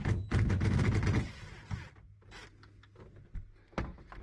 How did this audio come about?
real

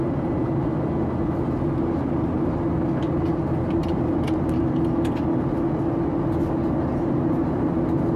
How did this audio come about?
real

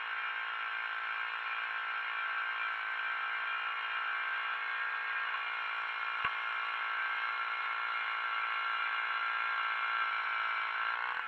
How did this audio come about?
real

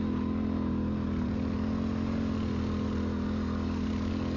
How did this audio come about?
real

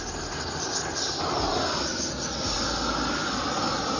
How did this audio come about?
real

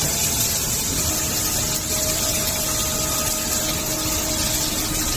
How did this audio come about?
real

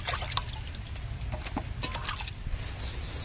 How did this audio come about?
real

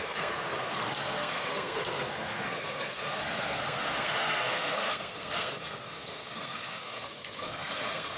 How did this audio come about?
fake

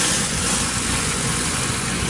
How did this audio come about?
fake